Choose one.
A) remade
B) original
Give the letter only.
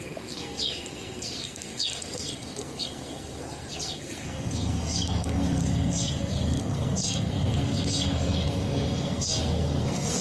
A